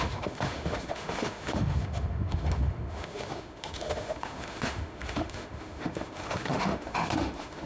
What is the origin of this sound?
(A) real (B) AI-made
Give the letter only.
B